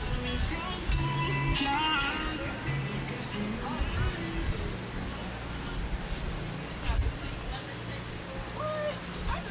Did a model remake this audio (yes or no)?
no